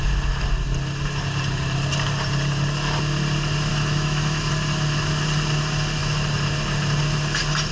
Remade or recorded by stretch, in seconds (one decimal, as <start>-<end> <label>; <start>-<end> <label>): 0.0-3.7 recorded; 3.7-4.5 remade; 4.5-7.7 recorded